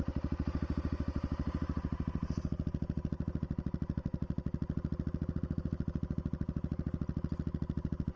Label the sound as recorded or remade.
recorded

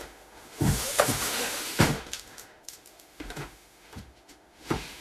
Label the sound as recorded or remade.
remade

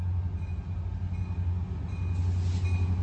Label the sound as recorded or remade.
recorded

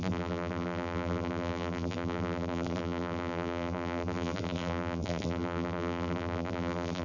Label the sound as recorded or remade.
remade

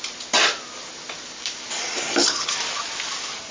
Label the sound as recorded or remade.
recorded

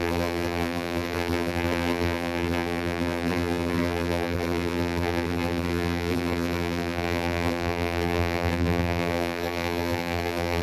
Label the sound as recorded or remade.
remade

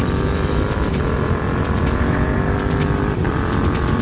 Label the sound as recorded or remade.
remade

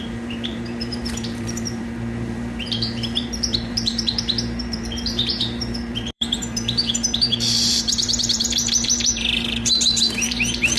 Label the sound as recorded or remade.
remade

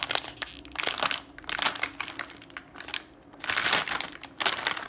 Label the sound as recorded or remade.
recorded